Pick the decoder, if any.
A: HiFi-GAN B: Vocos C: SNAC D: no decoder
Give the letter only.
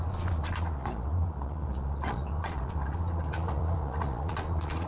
B